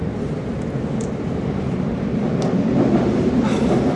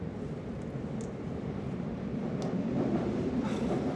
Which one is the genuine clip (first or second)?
first